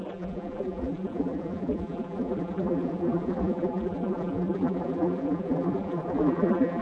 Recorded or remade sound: remade